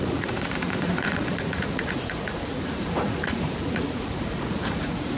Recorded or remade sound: remade